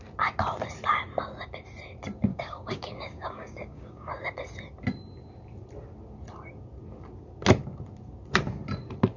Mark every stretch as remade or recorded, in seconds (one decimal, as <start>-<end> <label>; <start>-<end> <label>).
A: 0.0-2.3 recorded; 2.3-4.1 remade; 4.1-9.2 recorded